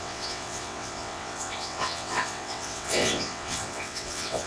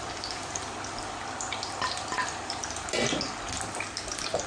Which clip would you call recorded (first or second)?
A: second